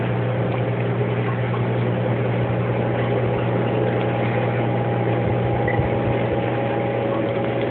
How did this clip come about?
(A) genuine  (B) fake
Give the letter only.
A